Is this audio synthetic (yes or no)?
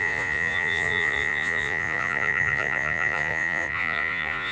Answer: yes